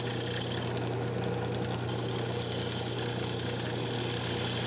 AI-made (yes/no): no